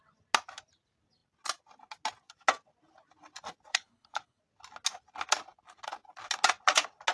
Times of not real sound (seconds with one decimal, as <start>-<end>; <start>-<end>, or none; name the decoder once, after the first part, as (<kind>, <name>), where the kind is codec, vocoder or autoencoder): 3.7-4.4 (codec, HILCodec)

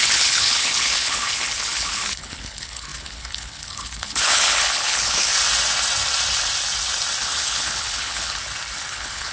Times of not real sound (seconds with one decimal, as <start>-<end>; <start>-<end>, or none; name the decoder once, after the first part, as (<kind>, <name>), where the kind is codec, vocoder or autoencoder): 0.0-5.3 (codec, HILCodec); 7.2-8.4; 8.9-9.3